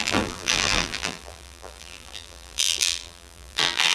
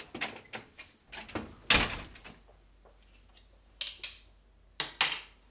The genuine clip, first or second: second